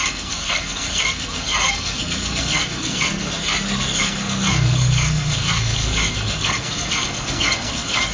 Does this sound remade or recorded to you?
remade